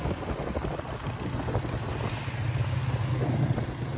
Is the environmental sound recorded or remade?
recorded